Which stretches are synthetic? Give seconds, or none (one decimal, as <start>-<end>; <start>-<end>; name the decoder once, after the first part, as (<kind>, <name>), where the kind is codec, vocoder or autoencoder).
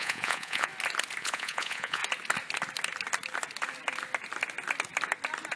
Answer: 0.0-0.7 (vocoder, Vocos); 1.2-2.0